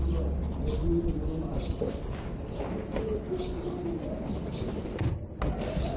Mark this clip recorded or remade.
recorded